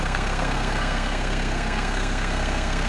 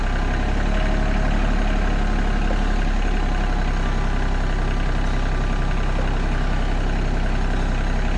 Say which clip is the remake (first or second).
first